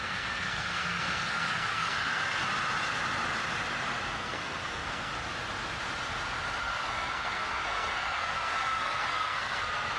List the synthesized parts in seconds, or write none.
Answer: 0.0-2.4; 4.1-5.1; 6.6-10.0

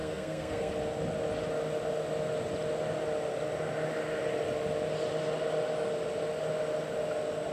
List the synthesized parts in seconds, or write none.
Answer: 0.0-0.7

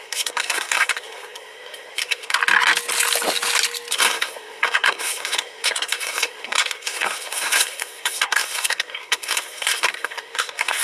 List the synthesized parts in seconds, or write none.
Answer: 0.0-2.4; 3.9-10.8

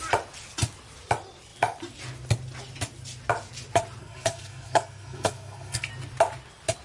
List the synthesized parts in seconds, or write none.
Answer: 4.0-5.9

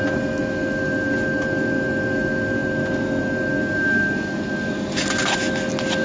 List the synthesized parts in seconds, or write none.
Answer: none

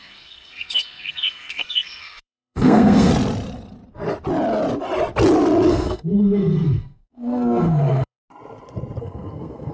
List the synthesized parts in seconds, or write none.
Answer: 0.0-3.1; 5.7-8.2; 9.0-9.7